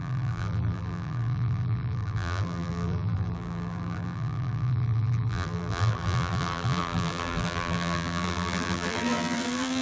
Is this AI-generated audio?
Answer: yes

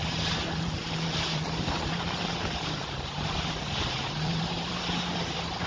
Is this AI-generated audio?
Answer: yes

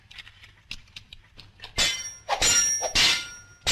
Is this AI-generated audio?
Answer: no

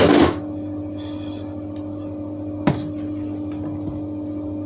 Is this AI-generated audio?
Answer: no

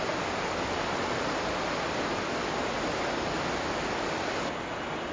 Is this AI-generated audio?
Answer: no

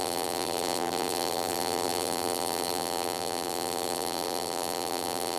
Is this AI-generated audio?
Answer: yes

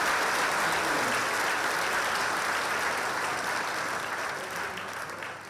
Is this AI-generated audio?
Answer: no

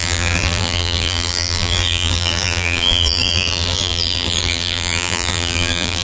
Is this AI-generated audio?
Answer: yes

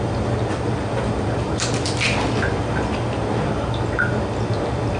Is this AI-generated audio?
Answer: no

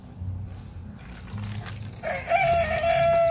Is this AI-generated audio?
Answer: no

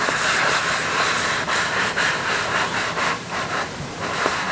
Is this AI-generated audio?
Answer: yes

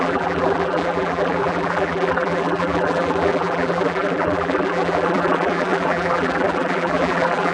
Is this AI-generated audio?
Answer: yes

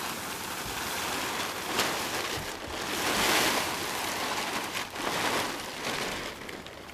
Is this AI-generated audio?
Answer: no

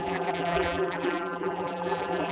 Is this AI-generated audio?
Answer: yes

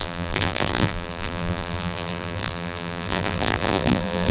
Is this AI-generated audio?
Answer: yes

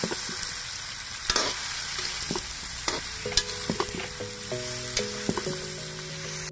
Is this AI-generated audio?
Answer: no